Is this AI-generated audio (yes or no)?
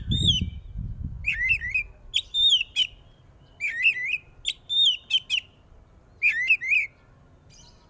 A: no